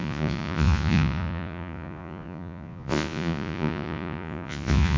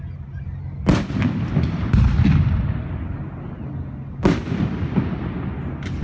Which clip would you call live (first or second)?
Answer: second